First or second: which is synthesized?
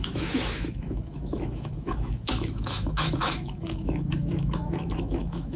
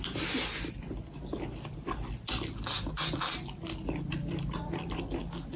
first